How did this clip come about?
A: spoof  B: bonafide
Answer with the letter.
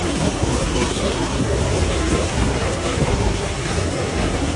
A